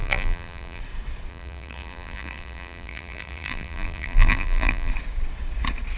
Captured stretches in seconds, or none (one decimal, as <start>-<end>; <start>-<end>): 0.8-1.3; 4.9-6.0